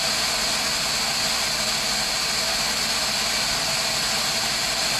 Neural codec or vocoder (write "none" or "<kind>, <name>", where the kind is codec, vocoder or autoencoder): none